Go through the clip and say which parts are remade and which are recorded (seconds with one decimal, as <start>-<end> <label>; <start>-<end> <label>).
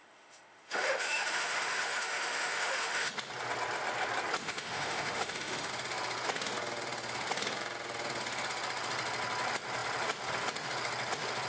0.0-3.1 remade; 3.1-4.4 recorded; 4.4-5.7 remade; 5.7-11.5 recorded